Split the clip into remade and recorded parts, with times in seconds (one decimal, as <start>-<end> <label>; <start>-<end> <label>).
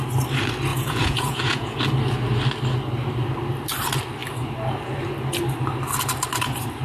0.0-0.7 recorded; 0.7-1.8 remade; 1.8-6.8 recorded